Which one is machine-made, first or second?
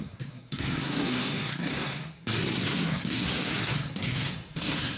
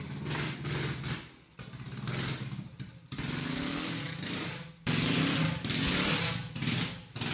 first